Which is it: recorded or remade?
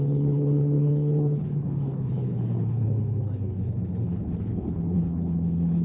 remade